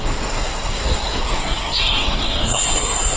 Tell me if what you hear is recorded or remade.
remade